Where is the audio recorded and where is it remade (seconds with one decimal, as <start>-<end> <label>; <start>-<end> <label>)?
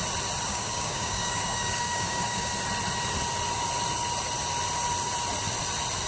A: 0.0-0.5 recorded; 0.5-2.5 remade; 2.5-6.1 recorded